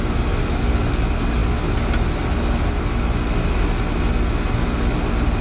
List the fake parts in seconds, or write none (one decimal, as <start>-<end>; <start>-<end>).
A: none